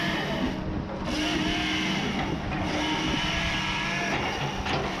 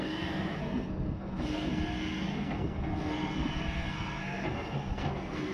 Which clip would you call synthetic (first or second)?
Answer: second